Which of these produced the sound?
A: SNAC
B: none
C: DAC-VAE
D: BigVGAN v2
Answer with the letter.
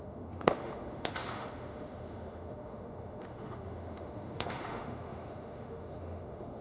C